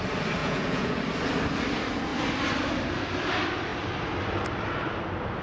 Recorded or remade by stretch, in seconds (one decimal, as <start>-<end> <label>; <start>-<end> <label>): 0.0-0.4 recorded; 0.4-1.0 remade; 1.0-5.4 recorded